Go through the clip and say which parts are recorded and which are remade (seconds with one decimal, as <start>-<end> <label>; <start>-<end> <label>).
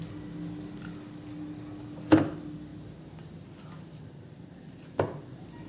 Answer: 0.0-5.7 recorded